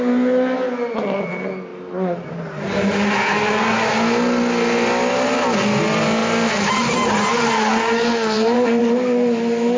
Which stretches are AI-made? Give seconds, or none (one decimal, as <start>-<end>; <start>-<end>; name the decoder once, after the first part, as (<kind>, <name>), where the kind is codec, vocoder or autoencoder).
1.7-2.3 (vocoder, BigVGAN v2); 6.2-8.8